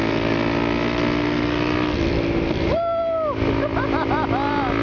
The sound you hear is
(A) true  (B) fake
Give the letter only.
A